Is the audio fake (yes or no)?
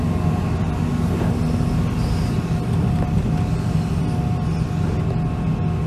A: no